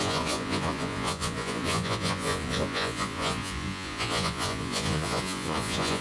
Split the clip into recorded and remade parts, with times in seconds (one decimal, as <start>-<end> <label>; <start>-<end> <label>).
0.0-6.0 remade